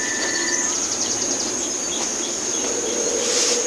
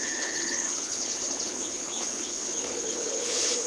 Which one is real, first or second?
first